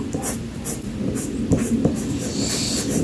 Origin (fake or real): real